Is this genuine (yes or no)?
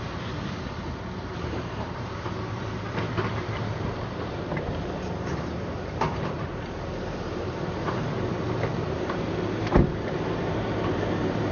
no